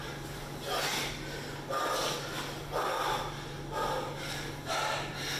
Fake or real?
real